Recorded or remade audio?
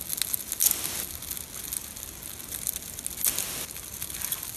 recorded